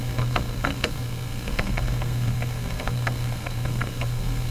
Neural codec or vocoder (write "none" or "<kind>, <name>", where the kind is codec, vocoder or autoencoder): codec, SNAC